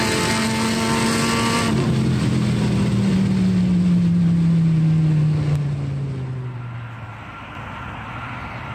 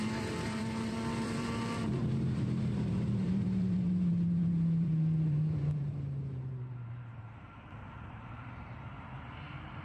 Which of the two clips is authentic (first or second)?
first